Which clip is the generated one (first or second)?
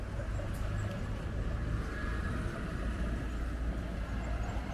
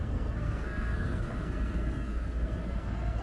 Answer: second